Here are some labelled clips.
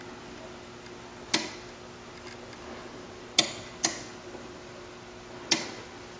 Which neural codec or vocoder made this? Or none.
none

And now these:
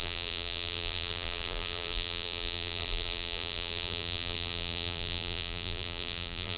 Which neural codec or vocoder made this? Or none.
vocoder, BigVGAN v2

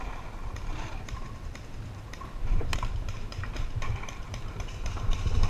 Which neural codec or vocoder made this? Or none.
vocoder, BigVGAN v2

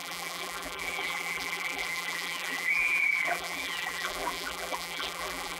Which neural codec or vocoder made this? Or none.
vocoder, BigVGAN v2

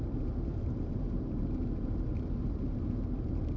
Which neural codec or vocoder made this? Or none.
vocoder, BigVGAN v2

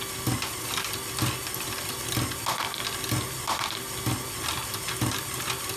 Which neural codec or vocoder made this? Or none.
none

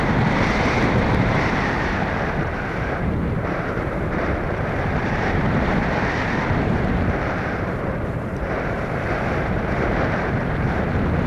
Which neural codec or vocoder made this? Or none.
vocoder, BigVGAN v2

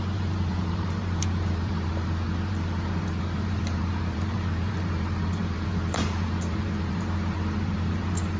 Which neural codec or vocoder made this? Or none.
vocoder, BigVGAN v2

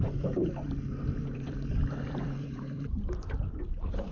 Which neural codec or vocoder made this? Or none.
vocoder, BigVGAN v2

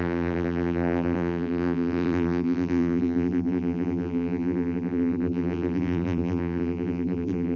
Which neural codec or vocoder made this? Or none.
vocoder, BigVGAN v2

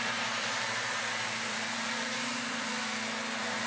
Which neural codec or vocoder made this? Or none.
vocoder, BigVGAN v2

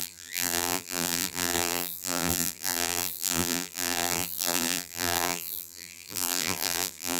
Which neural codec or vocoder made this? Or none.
vocoder, BigVGAN v2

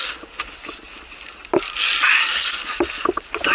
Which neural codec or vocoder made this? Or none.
none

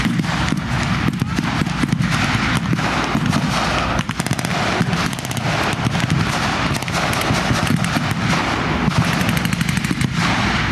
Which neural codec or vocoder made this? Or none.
none